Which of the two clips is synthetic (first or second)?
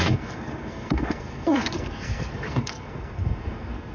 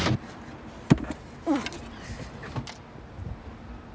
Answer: first